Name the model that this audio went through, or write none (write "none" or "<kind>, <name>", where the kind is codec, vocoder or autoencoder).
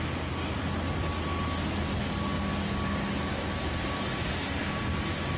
none